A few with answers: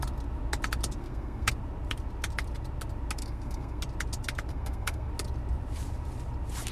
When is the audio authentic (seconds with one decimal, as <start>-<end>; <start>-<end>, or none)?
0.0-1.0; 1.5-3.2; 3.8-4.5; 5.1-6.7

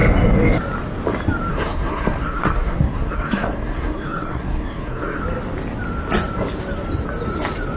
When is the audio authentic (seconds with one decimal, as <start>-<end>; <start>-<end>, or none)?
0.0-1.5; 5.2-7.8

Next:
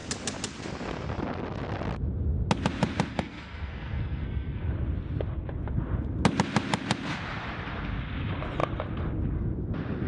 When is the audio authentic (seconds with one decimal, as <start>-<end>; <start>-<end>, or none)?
0.0-3.1; 4.7-10.1

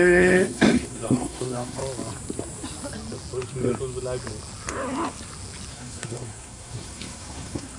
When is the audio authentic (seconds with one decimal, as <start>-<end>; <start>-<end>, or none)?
1.8-5.7

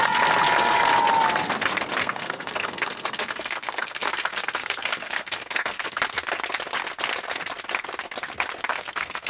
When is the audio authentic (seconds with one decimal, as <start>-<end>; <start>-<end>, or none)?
0.0-2.0; 6.0-8.7

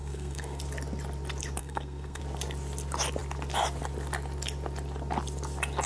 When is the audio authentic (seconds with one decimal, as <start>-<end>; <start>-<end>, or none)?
0.6-1.6; 2.2-5.9

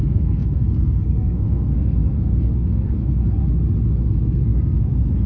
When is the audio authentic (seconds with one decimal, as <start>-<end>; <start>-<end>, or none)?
3.4-4.0